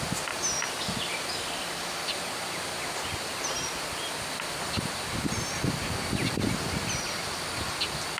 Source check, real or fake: real